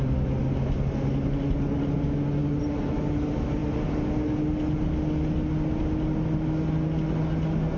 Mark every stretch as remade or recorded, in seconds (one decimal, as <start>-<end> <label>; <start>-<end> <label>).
0.0-7.8 recorded